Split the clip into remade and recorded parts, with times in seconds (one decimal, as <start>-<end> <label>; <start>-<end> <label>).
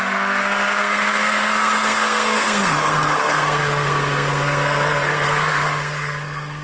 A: 0.0-6.6 remade